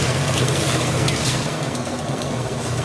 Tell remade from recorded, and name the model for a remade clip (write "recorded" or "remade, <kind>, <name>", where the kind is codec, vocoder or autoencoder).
remade, codec, SNAC